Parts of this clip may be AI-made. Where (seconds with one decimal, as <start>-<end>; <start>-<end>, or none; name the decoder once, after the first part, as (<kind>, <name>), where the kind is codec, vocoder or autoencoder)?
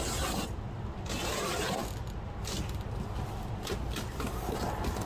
none